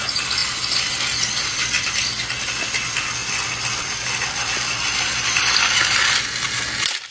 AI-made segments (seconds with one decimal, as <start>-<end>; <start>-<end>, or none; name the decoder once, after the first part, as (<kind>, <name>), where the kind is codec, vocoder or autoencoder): none